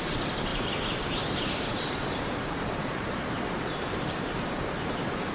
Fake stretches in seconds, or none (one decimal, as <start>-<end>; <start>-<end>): 0.5-3.2; 3.7-5.3